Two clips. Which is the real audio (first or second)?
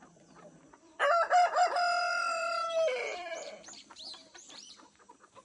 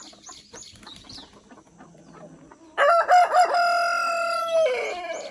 second